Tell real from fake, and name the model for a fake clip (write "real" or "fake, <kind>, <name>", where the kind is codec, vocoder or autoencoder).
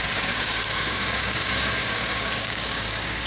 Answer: fake, codec, DAC